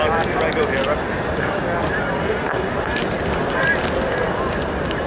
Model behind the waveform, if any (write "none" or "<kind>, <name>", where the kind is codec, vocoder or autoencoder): none